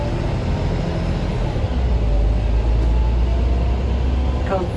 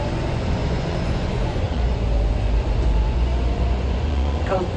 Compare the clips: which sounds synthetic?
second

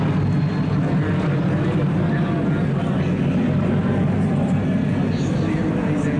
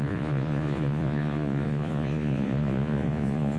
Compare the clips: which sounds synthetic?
second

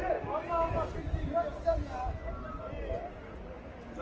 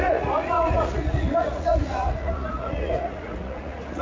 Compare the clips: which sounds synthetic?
second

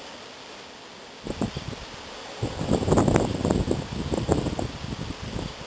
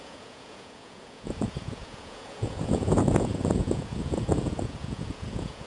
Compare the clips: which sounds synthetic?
second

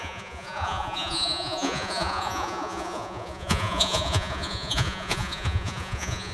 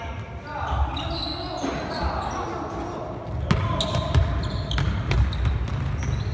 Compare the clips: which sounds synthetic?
first